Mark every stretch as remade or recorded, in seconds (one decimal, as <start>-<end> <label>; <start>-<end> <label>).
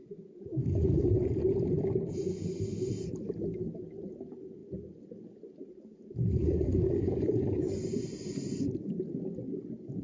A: 0.0-0.5 recorded; 0.5-1.2 remade; 1.2-6.4 recorded; 6.4-7.8 remade; 7.8-10.0 recorded